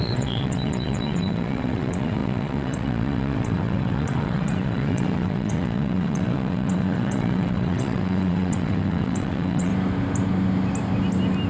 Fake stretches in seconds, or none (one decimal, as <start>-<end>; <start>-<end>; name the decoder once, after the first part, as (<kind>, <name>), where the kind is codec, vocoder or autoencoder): 0.0-9.7 (vocoder, WaveNeXt)